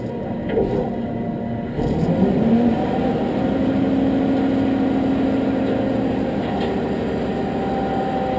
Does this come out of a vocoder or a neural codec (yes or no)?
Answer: no